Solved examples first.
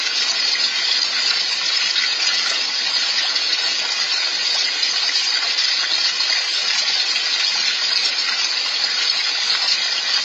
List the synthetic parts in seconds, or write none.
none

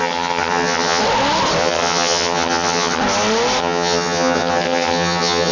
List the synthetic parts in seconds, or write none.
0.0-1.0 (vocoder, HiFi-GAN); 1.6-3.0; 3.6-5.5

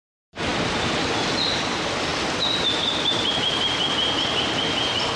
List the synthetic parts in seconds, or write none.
2.1-3.3 (vocoder, BigVGAN v2)